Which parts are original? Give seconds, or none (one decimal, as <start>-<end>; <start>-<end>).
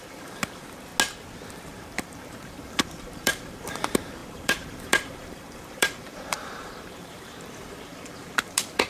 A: 0.9-1.5